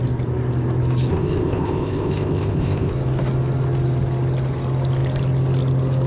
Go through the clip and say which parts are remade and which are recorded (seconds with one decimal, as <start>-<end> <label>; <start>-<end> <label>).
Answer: 0.0-1.1 recorded; 1.1-2.9 remade; 2.9-6.1 recorded